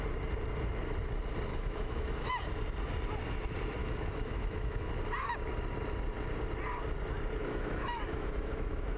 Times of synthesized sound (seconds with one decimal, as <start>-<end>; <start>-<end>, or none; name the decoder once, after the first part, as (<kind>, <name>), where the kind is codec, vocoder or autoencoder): 1.5-2.3 (autoencoder, DAC-VAE); 3.8-4.9; 7.4-9.0